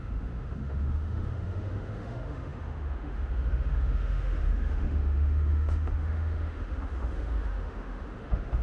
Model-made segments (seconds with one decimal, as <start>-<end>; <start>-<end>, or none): 0.0-8.6